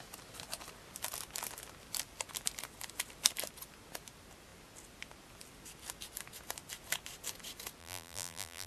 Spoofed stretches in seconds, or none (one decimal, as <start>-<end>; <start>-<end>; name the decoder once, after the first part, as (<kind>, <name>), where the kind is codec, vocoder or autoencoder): 7.8-8.7 (vocoder, BigVGAN v2)